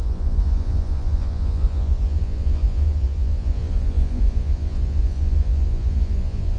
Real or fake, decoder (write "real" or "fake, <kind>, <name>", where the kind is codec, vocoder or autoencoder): fake, vocoder, Vocos